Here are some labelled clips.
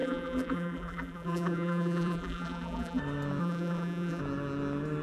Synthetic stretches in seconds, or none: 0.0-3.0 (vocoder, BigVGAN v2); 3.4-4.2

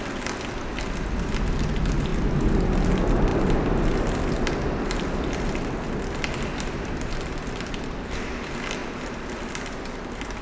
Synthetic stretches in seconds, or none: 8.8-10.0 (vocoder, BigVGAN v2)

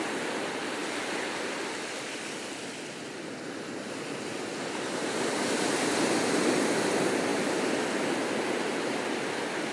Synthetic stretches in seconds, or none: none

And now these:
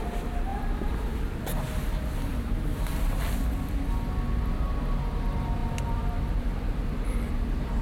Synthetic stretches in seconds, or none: 0.5-1.2 (vocoder, BigVGAN v2); 2.3-2.9; 5.6-7.8

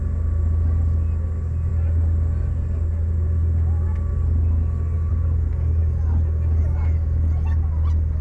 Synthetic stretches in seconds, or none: none

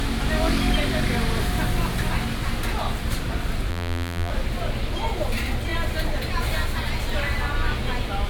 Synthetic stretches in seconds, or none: 3.7-4.3 (vocoder, BigVGAN v2)

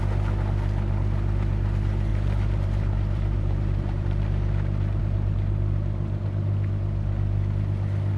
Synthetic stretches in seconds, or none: 2.1-5.0 (vocoder, BigVGAN v2)

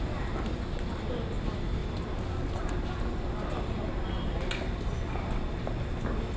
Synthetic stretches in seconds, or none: 1.8-2.7 (vocoder, BigVGAN v2)